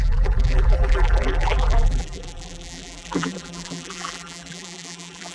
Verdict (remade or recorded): remade